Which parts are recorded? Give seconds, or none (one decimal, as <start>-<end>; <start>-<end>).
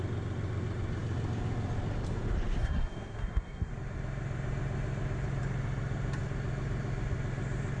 0.0-2.6; 3.7-7.8